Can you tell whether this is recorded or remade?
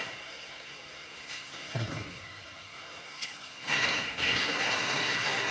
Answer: remade